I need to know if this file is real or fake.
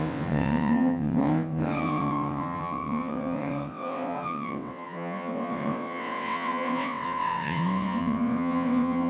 fake